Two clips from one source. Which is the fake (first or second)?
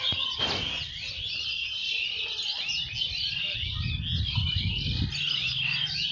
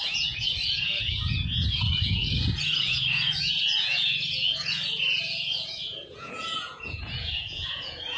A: second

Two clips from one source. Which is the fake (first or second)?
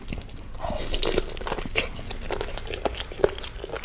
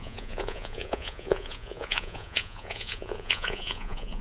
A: second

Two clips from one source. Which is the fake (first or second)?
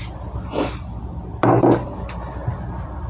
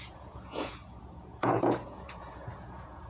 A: second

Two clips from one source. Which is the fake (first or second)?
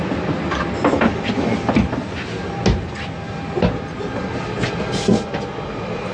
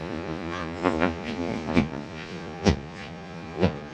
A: second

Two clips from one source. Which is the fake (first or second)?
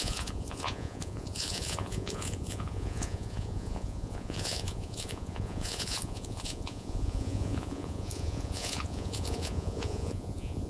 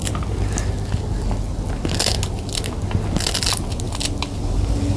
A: first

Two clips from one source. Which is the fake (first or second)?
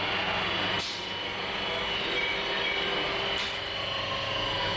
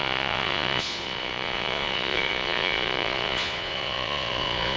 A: second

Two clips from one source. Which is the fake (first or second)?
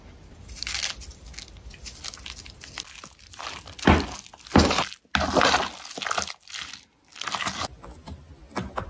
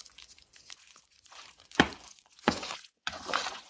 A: second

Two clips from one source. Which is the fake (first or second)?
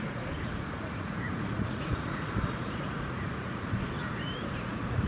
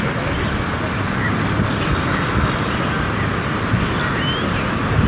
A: first